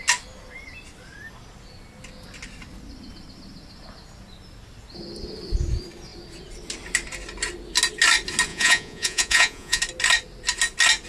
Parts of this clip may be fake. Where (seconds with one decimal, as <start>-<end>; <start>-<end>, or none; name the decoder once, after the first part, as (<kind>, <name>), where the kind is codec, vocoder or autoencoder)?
8.5-9.8 (vocoder, Vocos)